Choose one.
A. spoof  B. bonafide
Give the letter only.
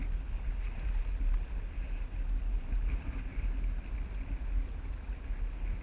B